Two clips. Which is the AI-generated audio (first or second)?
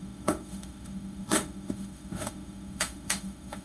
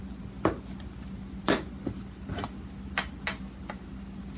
first